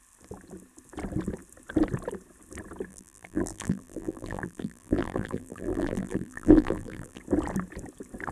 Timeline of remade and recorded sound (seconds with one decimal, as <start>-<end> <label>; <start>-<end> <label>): 0.0-2.9 recorded; 2.9-7.2 remade; 7.2-8.3 recorded

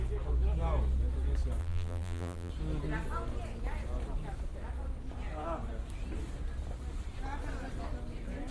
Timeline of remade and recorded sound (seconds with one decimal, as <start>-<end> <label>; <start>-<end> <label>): 0.0-1.6 recorded; 1.6-2.5 remade; 2.5-8.5 recorded

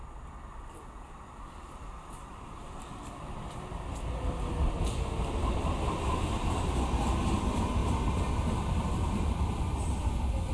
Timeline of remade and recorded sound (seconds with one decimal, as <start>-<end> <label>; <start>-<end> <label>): 0.0-2.6 remade; 2.6-7.8 recorded; 7.8-9.5 remade; 9.5-10.5 recorded

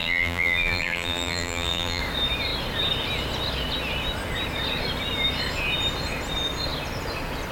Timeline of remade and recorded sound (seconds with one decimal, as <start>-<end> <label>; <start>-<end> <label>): 0.0-2.0 remade; 2.0-7.5 recorded

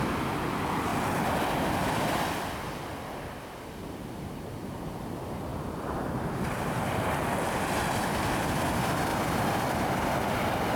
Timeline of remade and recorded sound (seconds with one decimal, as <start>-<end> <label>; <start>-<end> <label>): 0.0-5.5 recorded; 5.5-7.0 remade; 7.0-9.1 recorded; 9.1-10.1 remade; 10.1-10.8 recorded

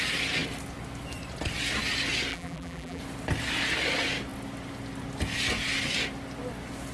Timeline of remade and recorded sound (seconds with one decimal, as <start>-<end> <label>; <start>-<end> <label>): 0.0-2.3 recorded; 2.3-3.0 remade; 3.0-6.9 recorded